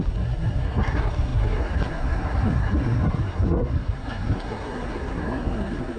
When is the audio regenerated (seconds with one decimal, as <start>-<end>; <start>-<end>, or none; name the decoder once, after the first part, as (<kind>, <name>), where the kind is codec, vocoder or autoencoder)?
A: 0.0-6.0 (codec, SNAC)